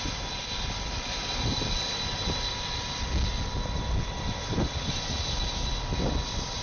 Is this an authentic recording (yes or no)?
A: yes